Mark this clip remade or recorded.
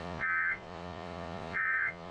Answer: remade